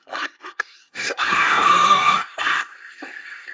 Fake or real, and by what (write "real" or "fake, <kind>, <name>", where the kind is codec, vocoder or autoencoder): fake, codec, SNAC